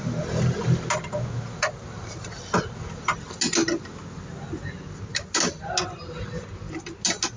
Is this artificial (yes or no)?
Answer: no